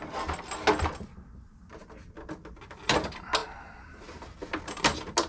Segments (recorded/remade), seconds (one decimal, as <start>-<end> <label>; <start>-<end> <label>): 0.0-5.3 recorded